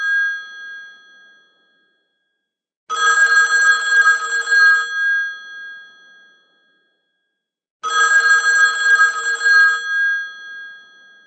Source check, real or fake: real